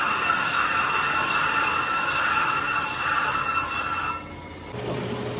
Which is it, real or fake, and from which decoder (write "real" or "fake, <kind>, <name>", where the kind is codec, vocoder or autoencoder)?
real